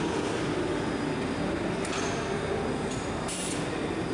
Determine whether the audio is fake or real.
real